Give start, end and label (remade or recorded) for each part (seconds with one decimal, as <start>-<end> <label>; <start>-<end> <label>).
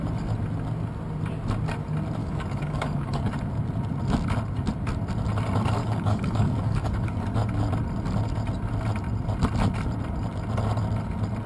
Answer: 0.0-2.2 recorded; 2.2-3.3 remade; 3.3-5.8 recorded; 5.8-7.2 remade; 7.2-11.5 recorded